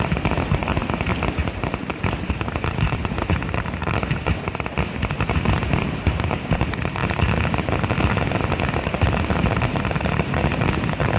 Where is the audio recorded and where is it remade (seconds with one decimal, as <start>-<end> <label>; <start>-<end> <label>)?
0.0-7.0 remade; 7.0-8.7 recorded; 8.7-11.2 remade